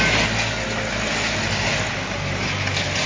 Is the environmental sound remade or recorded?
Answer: recorded